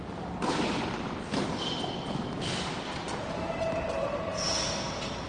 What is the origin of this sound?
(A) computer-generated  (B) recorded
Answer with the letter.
B